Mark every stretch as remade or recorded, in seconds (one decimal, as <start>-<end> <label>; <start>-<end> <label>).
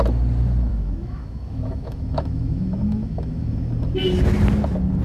0.0-0.7 recorded; 0.7-3.7 remade; 3.7-5.0 recorded